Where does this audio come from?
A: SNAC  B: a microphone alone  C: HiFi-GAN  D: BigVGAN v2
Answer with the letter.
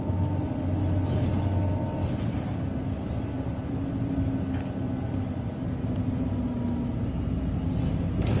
B